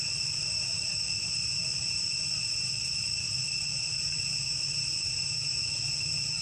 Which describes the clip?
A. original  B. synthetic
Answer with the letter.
B